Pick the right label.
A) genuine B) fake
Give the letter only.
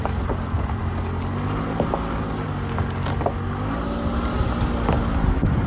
A